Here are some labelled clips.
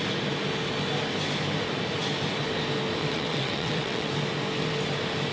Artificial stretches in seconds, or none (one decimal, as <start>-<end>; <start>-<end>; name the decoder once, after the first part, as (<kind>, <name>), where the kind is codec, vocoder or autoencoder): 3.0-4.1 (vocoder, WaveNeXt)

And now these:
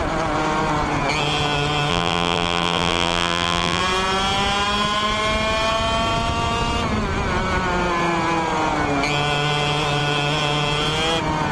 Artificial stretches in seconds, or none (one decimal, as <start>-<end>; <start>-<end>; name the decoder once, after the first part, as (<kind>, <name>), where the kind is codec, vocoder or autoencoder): 1.9-3.8 (vocoder, BigVGAN v2)

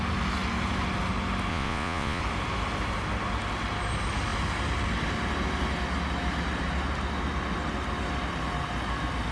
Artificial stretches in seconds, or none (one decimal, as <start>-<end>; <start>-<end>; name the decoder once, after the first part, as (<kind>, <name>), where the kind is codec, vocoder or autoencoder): 1.5-2.2 (vocoder, Vocos)

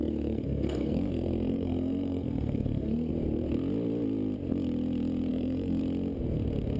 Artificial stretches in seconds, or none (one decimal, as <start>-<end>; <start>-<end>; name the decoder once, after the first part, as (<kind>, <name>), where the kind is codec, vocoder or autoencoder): 0.0-3.1 (codec, SNAC); 5.3-5.8

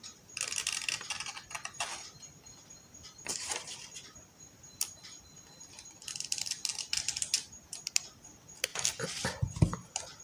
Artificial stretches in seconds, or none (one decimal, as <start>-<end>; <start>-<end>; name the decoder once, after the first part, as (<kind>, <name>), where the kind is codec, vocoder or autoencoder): none

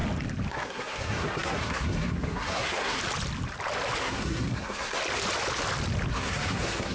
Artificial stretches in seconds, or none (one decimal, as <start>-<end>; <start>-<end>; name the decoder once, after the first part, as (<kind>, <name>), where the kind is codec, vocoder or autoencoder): 0.5-3.0 (codec, SNAC); 4.0-5.0; 6.1-6.9

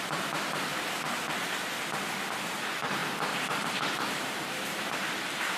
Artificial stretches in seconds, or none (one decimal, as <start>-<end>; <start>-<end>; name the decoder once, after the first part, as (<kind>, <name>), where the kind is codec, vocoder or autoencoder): 0.0-0.7 (vocoder, BigVGAN v2); 2.5-5.6